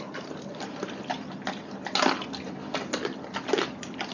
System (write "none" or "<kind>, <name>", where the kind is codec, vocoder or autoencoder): none